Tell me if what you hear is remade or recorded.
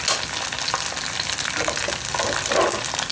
recorded